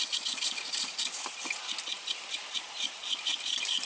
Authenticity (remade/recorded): recorded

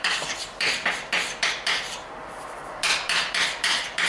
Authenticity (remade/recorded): remade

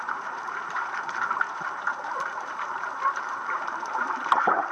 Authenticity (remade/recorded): remade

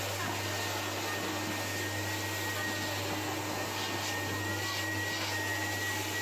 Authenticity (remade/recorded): recorded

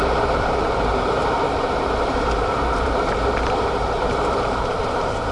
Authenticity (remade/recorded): remade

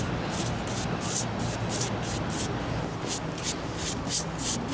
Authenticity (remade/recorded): recorded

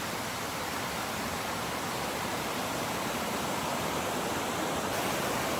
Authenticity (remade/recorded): remade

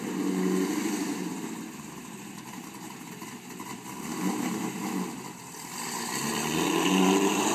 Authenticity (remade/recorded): remade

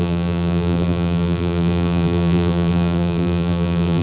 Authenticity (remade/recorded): remade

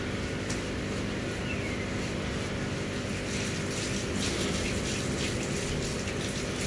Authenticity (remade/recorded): recorded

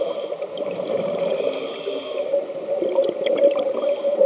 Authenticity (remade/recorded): recorded